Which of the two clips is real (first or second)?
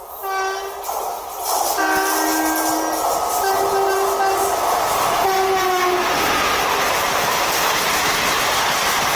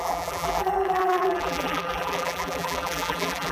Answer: first